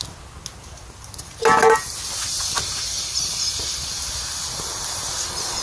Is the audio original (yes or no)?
yes